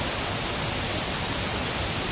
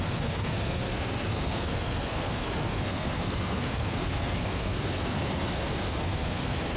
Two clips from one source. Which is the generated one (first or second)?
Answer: second